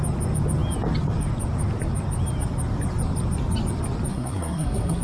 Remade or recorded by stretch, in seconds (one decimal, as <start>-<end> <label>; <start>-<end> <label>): 0.0-4.1 recorded; 4.1-5.0 remade